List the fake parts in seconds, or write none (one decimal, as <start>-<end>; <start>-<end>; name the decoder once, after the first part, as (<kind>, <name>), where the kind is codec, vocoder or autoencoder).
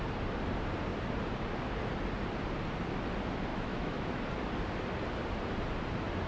3.5-4.2 (autoencoder, DAC-VAE)